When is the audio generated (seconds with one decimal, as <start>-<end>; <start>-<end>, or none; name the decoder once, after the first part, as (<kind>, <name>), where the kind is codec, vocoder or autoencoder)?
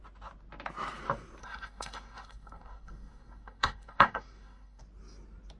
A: 1.4-4.8 (codec, SNAC)